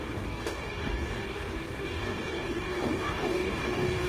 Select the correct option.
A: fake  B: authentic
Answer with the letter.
A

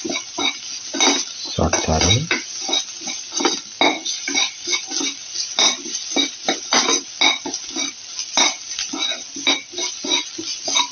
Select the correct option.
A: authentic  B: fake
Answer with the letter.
A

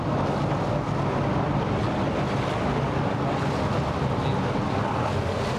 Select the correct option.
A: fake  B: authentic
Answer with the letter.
B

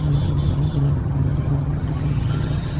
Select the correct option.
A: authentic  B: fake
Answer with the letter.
B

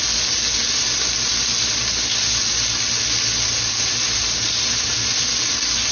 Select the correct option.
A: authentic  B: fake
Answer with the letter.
A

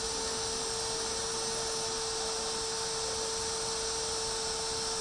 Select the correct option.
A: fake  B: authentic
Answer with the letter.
B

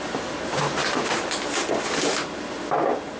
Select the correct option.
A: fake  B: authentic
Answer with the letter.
B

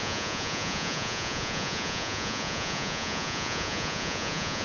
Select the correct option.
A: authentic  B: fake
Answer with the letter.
B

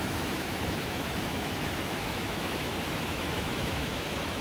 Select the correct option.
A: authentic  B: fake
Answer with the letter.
B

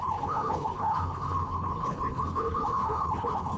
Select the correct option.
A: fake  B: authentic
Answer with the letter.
A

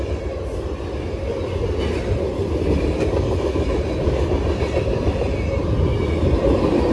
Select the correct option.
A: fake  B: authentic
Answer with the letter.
B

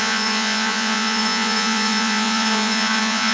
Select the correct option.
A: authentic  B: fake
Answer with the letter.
B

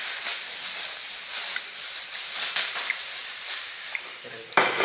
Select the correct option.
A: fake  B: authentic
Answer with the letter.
A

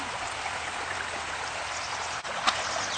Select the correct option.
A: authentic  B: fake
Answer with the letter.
A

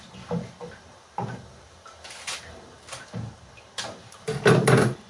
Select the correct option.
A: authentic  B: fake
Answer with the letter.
A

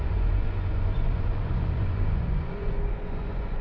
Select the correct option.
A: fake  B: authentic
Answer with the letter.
A